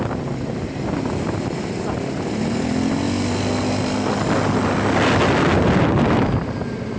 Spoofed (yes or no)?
no